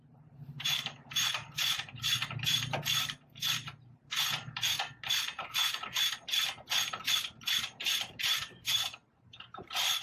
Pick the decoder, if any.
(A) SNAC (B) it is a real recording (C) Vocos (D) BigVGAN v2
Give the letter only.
D